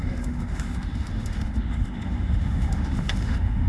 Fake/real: fake